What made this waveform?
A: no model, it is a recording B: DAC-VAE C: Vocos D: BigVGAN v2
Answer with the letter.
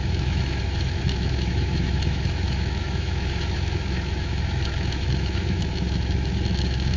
B